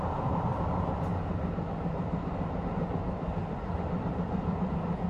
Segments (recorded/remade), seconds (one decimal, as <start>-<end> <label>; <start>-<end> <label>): 0.0-5.1 remade